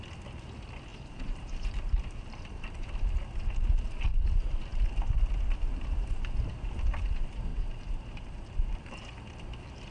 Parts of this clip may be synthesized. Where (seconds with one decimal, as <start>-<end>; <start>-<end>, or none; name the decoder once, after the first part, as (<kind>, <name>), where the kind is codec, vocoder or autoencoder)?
0.9-3.0 (vocoder, BigVGAN v2); 7.5-9.2